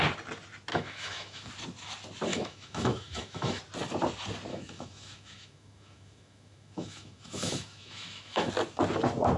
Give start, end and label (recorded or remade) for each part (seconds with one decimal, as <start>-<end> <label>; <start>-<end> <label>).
0.0-0.7 recorded; 0.7-1.5 remade; 1.5-2.3 recorded; 2.3-3.6 remade; 3.6-4.5 recorded; 4.5-8.5 remade; 8.5-9.4 recorded